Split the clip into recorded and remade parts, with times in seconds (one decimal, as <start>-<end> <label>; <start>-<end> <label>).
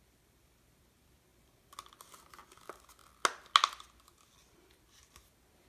0.0-5.7 recorded